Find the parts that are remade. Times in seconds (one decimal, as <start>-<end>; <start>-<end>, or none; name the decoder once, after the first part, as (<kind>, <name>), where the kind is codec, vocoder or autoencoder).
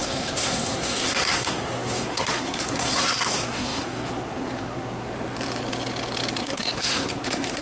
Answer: 0.0-5.1 (codec, SNAC); 6.4-7.6